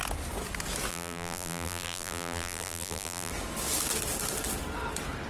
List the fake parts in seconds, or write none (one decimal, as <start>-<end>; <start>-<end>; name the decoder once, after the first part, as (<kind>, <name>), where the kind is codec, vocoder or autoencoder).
0.9-3.3 (vocoder, BigVGAN v2)